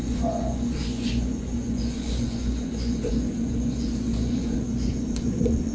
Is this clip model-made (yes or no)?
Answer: yes